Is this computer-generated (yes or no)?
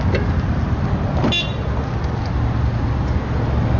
no